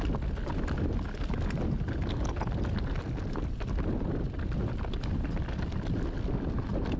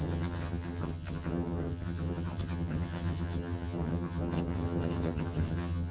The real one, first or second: first